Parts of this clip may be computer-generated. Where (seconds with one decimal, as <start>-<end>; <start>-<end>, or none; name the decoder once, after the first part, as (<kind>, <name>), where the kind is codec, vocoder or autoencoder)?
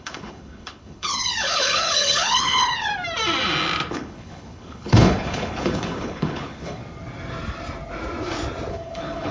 0.0-2.9 (codec, HILCodec); 3.9-6.8; 8.7-9.3